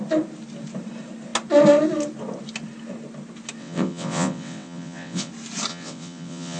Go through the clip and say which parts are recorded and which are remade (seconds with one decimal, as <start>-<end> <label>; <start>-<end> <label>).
0.0-3.6 recorded; 3.6-5.3 remade; 5.3-5.7 recorded; 5.7-6.6 remade

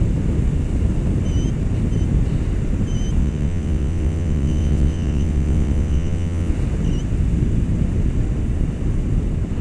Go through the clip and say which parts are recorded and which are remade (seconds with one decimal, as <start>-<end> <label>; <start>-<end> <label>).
0.0-3.2 recorded; 3.2-6.5 remade; 6.5-9.6 recorded

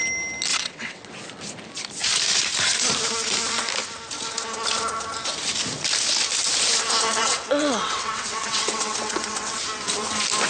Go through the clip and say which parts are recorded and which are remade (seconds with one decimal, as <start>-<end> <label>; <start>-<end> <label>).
0.0-0.5 recorded; 0.5-1.1 remade; 1.1-7.2 recorded; 7.2-9.6 remade; 9.6-10.5 recorded

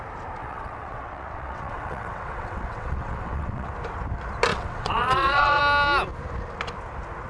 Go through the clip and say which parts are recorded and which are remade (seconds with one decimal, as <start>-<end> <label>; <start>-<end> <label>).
0.0-0.4 recorded; 0.4-3.7 remade; 3.7-4.5 recorded; 4.5-5.6 remade; 5.6-7.3 recorded

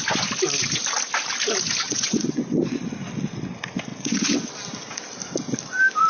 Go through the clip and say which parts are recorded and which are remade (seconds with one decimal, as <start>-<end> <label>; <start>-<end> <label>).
0.0-1.8 recorded; 1.8-2.8 remade; 2.8-3.9 recorded; 3.9-4.5 remade; 4.5-6.1 recorded

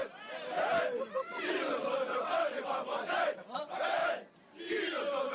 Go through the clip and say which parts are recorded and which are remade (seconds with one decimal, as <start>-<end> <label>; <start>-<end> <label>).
0.0-1.1 recorded; 1.1-4.0 remade; 4.0-5.3 recorded